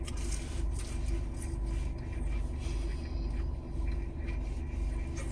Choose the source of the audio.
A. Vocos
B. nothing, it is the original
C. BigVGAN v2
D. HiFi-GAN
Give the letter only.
B